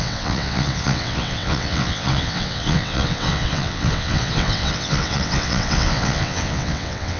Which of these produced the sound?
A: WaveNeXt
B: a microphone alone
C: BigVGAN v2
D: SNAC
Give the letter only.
A